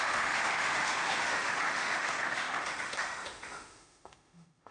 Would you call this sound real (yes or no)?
no